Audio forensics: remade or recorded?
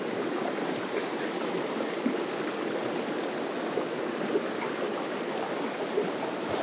recorded